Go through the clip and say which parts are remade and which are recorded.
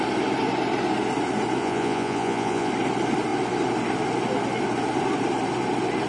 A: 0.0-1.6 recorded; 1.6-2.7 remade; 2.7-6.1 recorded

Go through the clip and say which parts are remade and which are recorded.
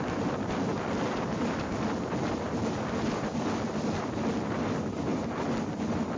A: 0.0-6.2 recorded